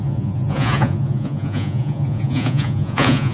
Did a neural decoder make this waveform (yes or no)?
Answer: yes